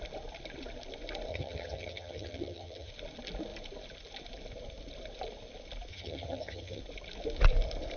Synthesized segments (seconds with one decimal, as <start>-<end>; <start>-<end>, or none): 1.3-2.9; 5.9-6.8